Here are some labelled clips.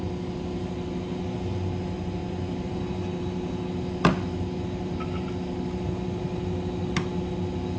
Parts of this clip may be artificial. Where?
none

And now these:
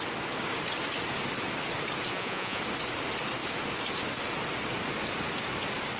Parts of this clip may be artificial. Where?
2.1-2.6 (vocoder, Vocos)

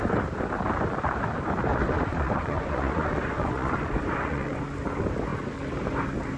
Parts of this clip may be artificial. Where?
1.7-4.6 (vocoder, Vocos)

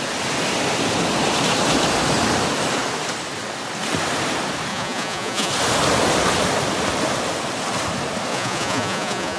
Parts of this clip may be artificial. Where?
4.7-5.5 (vocoder, Vocos); 8.3-9.4

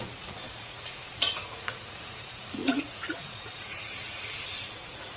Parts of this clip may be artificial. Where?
0.0-5.2 (vocoder, Vocos)

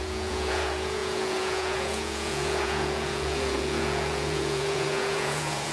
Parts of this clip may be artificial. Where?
0.0-5.7 (vocoder, Vocos)

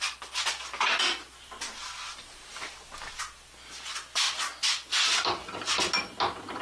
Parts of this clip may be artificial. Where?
none

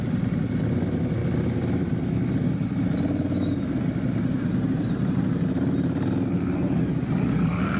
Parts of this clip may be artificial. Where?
none